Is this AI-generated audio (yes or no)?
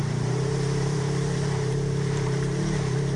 yes